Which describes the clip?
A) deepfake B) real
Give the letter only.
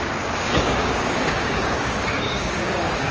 A